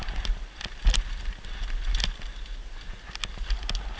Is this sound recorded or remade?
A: recorded